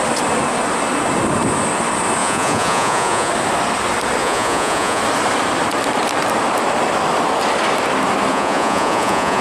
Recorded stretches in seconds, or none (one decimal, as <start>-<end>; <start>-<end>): 0.0-2.2; 3.3-4.2; 5.0-8.3